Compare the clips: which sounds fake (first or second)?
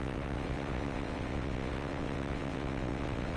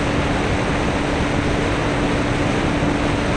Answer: first